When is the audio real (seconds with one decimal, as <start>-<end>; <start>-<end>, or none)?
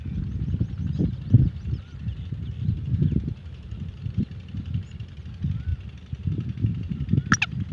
0.0-7.7